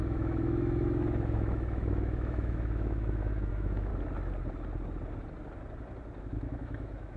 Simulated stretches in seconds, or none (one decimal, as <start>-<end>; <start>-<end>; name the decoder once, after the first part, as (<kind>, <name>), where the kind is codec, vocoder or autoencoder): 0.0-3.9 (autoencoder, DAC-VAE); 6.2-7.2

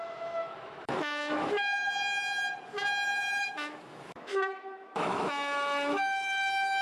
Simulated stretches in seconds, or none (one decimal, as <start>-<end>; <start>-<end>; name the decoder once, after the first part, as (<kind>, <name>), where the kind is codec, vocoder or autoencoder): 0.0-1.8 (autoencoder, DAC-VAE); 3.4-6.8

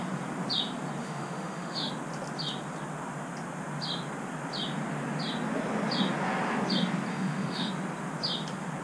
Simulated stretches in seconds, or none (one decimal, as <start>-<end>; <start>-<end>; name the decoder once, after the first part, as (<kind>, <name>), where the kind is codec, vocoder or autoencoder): 1.0-1.9 (autoencoder, DAC-VAE); 7.1-7.7

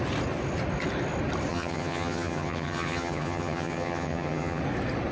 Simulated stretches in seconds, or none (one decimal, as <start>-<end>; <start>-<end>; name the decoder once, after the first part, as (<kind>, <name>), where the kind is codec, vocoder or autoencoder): 1.5-4.6 (vocoder, HiFi-GAN)

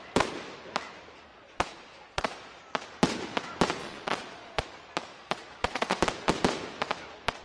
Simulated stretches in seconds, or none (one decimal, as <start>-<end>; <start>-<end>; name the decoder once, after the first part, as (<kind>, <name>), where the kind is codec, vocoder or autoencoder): 1.3-2.6 (vocoder, Vocos); 3.8-4.6; 5.1-6.0

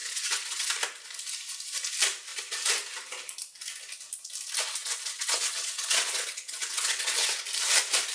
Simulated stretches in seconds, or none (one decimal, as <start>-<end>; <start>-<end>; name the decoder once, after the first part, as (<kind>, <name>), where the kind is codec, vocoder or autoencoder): 0.0-0.7 (vocoder, WaveNeXt); 4.8-7.4

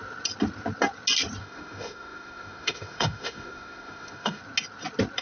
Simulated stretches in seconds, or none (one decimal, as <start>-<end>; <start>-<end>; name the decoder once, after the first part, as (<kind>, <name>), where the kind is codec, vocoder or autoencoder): 1.4-4.4 (autoencoder, DAC-VAE)

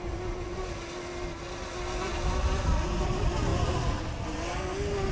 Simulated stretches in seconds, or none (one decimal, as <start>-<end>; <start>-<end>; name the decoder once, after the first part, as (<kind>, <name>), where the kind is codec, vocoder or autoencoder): none